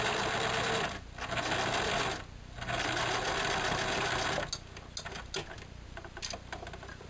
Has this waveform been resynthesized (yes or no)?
no